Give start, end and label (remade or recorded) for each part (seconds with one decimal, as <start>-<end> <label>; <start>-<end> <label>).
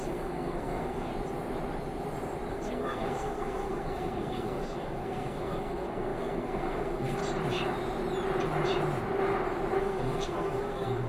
0.0-1.1 remade; 1.1-2.5 recorded; 2.5-7.2 remade; 7.2-9.8 recorded; 9.8-11.1 remade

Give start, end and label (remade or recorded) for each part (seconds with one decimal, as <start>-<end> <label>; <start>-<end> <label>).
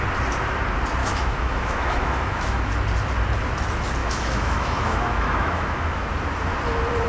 0.0-1.0 recorded; 1.0-2.6 remade; 2.6-4.0 recorded; 4.0-6.1 remade; 6.1-7.1 recorded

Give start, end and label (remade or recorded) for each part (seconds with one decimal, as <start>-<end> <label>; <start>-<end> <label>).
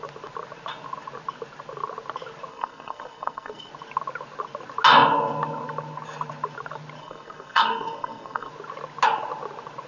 0.0-2.5 recorded; 2.5-3.7 remade; 3.7-7.0 recorded; 7.0-8.5 remade; 8.5-9.9 recorded